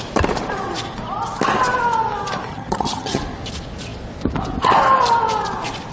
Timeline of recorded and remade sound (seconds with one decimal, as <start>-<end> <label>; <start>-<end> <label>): 0.0-2.5 recorded; 2.5-3.2 remade; 3.2-5.9 recorded